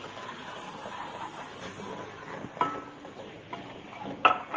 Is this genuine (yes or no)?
yes